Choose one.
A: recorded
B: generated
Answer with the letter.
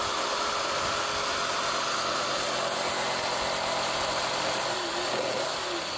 A